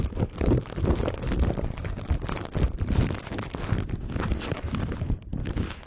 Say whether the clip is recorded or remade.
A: recorded